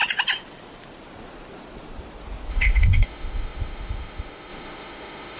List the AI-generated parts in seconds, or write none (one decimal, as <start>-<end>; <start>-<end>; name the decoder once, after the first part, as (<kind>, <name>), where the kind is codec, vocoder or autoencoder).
2.5-5.4 (autoencoder, DAC-VAE)